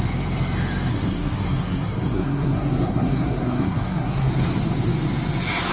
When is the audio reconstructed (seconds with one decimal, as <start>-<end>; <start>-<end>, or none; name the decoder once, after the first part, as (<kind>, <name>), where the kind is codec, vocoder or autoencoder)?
0.9-4.3 (codec, SNAC)